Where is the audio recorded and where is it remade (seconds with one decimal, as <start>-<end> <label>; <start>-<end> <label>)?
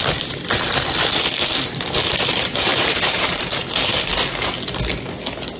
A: 0.0-2.7 recorded; 2.7-3.5 remade; 3.5-5.6 recorded